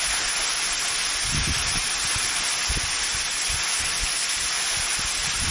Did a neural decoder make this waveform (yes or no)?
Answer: no